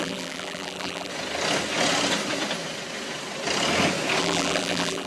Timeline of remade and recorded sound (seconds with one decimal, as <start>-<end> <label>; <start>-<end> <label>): 0.0-1.1 remade; 1.1-4.2 recorded; 4.2-5.1 remade